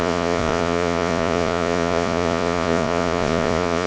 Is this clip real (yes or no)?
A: no